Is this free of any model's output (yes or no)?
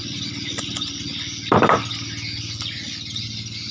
yes